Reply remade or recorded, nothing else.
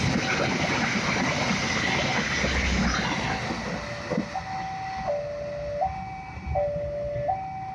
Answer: recorded